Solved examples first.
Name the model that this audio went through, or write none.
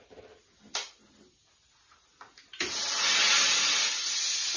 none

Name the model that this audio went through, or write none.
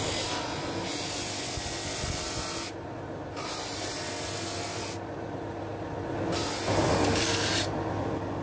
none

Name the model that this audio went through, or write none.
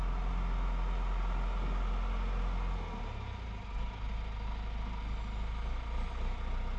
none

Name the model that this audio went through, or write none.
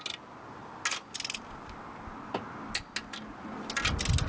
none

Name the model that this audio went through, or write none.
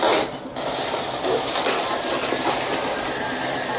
none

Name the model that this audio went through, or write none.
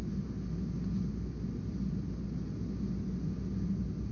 none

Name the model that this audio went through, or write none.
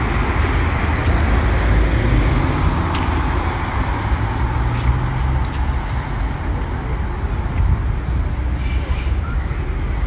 none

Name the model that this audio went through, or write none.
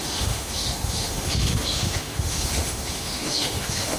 autoencoder, DAC-VAE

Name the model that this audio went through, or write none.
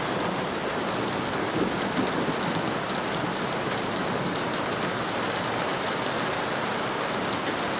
none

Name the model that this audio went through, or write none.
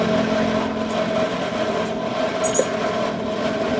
none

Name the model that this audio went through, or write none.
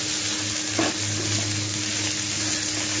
none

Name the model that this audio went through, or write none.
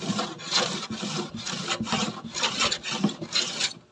none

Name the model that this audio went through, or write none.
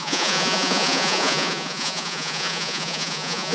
vocoder, Vocos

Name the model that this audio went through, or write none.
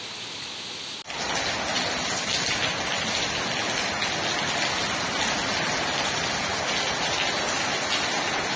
none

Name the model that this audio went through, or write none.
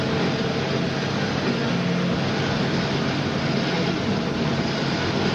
none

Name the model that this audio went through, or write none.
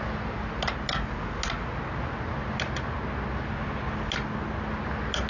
none